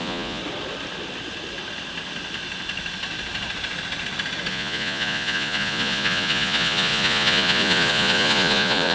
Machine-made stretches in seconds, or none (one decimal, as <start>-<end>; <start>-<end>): 0.0-0.4; 4.5-8.9